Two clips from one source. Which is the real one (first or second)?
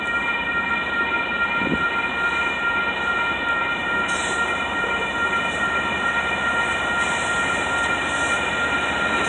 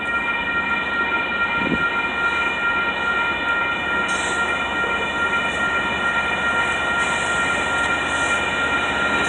second